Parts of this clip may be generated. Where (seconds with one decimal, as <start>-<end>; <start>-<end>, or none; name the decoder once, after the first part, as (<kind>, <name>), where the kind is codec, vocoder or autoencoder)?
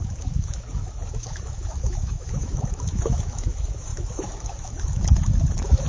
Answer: 0.0-5.9 (autoencoder, DAC-VAE)